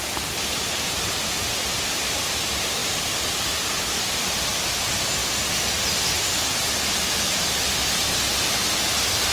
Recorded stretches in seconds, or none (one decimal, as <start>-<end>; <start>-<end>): 0.0-9.3